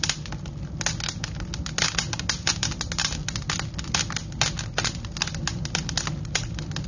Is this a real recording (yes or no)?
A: yes